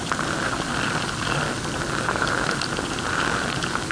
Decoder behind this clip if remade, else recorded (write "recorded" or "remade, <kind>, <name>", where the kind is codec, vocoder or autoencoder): recorded